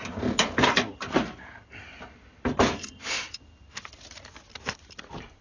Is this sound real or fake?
real